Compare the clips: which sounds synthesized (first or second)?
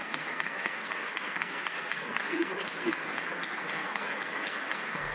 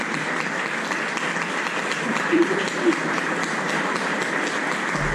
first